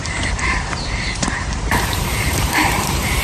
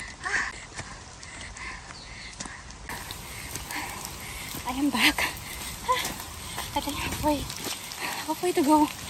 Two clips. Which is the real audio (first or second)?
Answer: second